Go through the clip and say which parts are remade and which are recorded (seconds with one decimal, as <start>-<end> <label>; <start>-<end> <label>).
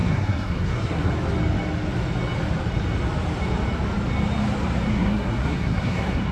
0.0-1.1 remade; 1.1-4.9 recorded; 4.9-6.3 remade